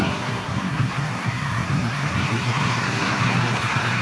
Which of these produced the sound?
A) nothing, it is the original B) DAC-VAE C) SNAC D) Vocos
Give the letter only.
C